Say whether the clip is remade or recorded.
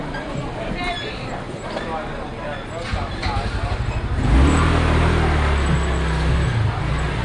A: recorded